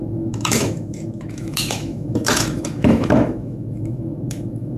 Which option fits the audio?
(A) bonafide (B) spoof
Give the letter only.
B